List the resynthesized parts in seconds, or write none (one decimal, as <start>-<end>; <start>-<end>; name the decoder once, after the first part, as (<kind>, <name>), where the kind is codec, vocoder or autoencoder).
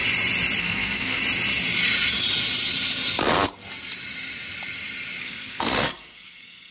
0.6-1.2 (codec, SNAC); 5.2-6.7